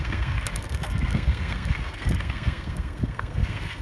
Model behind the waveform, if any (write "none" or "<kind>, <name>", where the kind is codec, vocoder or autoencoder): codec, SNAC